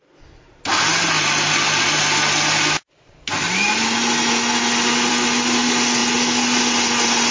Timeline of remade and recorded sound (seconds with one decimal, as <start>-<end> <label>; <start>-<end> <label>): 0.0-7.3 recorded